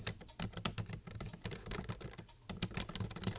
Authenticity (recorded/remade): recorded